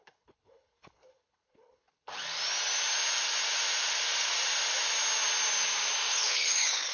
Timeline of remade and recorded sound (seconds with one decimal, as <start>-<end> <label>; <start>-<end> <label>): 0.0-2.1 remade; 2.1-6.1 recorded; 6.1-6.9 remade